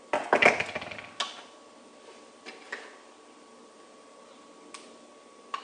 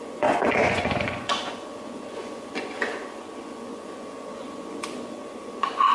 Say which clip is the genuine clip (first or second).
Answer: first